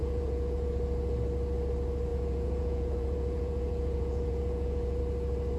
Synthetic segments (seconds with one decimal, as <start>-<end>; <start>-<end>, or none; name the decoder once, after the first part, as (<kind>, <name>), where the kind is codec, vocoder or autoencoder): 0.0-0.7 (vocoder, Vocos); 2.1-5.0